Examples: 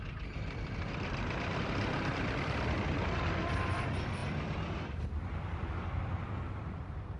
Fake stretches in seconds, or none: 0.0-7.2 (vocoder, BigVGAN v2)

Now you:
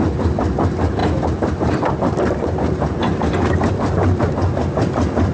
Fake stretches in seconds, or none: 1.0-4.2 (vocoder, BigVGAN v2)

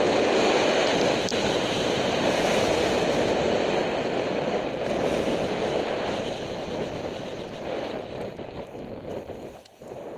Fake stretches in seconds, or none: 1.3-2.7 (vocoder, BigVGAN v2)

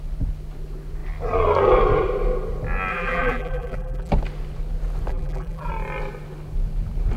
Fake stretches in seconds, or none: 2.9-4.1 (vocoder, BigVGAN v2); 5.1-5.7

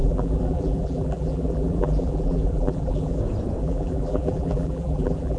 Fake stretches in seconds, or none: 0.0-3.2 (vocoder, BigVGAN v2); 3.6-5.4

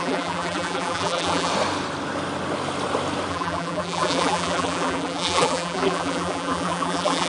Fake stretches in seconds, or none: 0.0-1.5 (vocoder, BigVGAN v2); 3.3-7.3